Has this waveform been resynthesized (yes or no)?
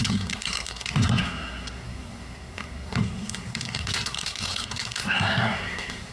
yes